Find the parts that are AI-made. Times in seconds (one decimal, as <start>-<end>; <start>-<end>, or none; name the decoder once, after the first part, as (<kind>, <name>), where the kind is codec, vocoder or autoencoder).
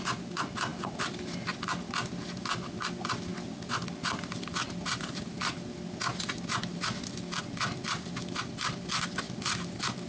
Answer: none